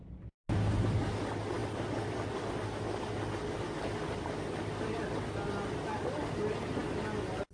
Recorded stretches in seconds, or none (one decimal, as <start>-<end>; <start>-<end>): 0.0-7.5